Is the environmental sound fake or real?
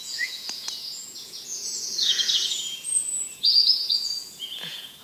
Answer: fake